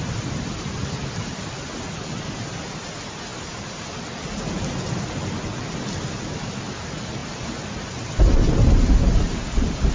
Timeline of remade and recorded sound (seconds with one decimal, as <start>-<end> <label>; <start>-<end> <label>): 0.0-9.9 recorded

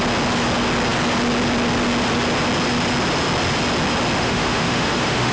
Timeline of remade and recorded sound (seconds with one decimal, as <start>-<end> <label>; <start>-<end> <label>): 0.0-4.2 recorded; 4.2-5.3 remade

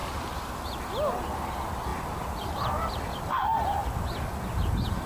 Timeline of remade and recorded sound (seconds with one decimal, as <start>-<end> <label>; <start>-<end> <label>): 0.0-5.1 recorded

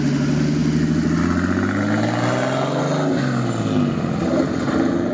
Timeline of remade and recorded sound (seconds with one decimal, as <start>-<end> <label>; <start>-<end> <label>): 0.0-5.1 recorded

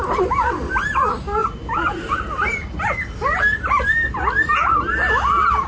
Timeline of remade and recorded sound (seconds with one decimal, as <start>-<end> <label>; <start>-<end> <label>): 0.0-5.7 recorded